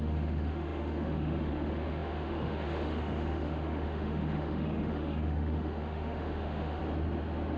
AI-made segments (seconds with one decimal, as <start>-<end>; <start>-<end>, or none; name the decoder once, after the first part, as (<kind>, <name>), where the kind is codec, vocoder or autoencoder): 0.0-6.8 (autoencoder, DAC-VAE)